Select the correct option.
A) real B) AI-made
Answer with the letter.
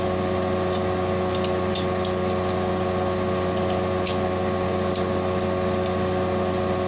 A